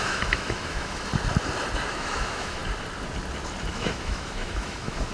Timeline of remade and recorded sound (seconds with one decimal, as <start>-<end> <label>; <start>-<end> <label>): 0.0-1.1 remade; 1.1-1.9 recorded; 1.9-2.6 remade; 2.6-3.7 recorded; 3.7-5.1 remade